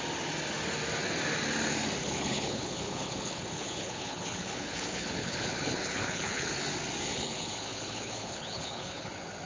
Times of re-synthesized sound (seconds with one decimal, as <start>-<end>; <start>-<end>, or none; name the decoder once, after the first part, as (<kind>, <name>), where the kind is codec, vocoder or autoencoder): 2.0-6.5 (codec, HILCodec); 7.1-9.1